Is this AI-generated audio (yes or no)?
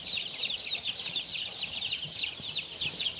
yes